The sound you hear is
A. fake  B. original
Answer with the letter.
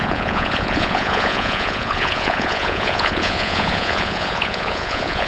A